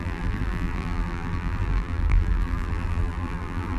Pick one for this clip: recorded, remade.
remade